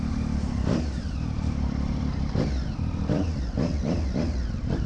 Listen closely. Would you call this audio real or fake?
fake